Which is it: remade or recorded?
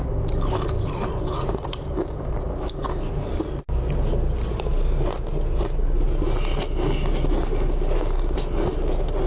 recorded